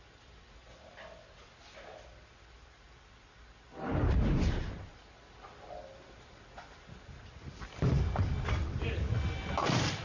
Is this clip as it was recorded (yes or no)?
yes